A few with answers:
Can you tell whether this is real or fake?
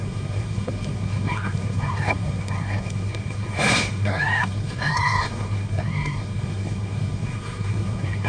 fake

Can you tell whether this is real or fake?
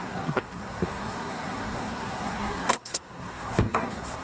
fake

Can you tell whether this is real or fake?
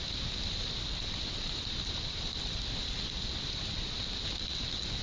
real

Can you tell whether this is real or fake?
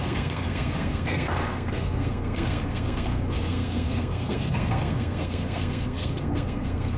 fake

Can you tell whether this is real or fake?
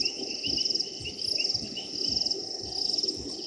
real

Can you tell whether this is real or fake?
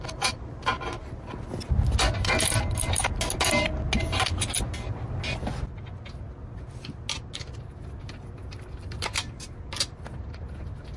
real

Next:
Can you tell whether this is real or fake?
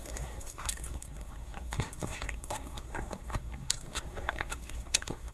fake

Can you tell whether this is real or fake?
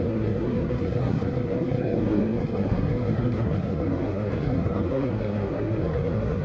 fake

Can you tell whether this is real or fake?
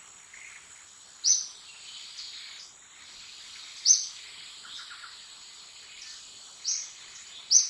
real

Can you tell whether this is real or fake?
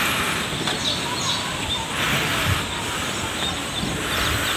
real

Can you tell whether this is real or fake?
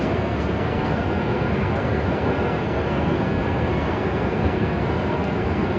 fake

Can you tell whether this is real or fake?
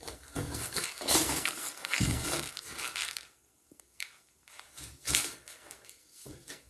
fake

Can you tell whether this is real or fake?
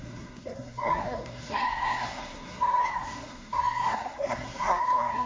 fake